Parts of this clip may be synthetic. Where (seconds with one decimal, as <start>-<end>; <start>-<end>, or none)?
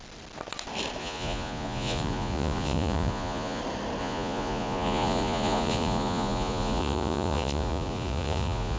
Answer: 1.0-3.6; 4.0-8.8